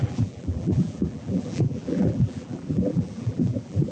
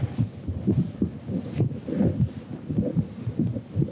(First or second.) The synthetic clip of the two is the first